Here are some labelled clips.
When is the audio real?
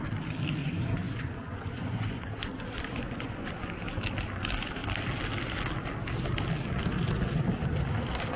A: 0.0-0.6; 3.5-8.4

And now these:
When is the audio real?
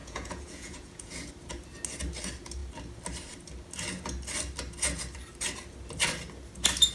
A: 1.3-6.9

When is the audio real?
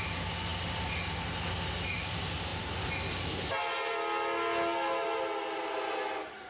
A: 0.0-6.5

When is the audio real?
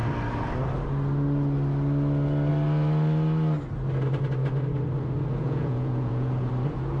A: 0.0-5.4; 6.5-7.0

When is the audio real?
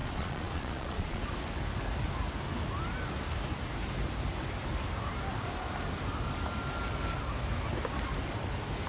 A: 1.2-8.9